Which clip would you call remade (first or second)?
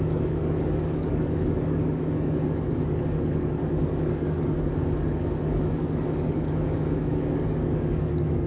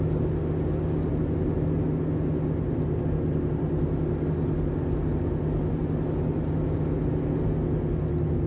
first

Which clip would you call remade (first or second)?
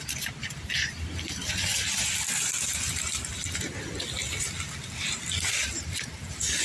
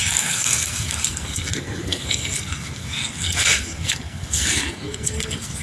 second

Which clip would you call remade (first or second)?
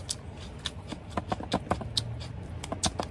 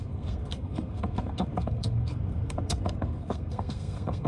second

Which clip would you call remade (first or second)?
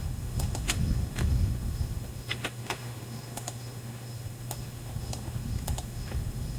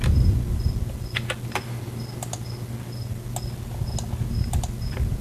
first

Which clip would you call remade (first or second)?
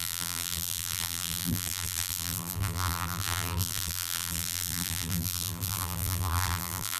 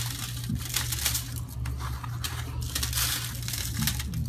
first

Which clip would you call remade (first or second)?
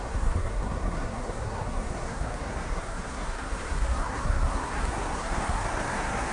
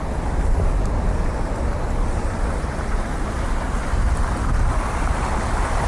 first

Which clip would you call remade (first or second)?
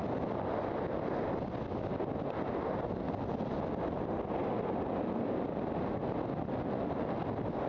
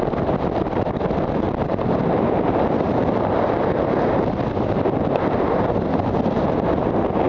second